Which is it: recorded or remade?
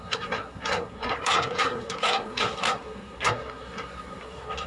remade